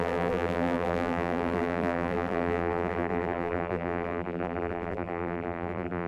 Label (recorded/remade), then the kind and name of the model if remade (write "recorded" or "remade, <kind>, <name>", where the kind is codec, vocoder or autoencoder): remade, vocoder, BigVGAN v2